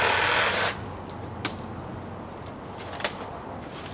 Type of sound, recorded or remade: recorded